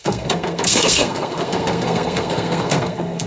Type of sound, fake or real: fake